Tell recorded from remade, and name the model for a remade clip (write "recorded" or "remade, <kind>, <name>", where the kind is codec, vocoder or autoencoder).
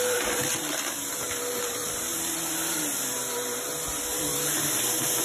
remade, vocoder, BigVGAN v2